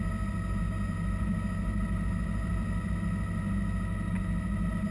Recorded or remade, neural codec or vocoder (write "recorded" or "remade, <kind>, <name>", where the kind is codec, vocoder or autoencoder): recorded